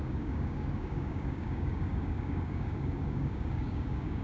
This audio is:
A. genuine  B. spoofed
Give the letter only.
B